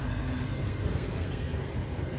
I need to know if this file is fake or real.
fake